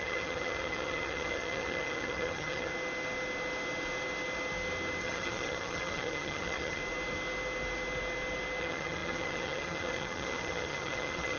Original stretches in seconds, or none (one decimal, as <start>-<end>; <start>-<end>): 2.7-5.0; 6.8-8.6